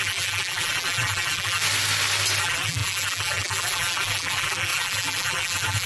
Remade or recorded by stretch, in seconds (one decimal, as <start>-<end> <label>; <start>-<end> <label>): 0.0-1.6 remade; 1.6-2.4 recorded; 2.4-5.9 remade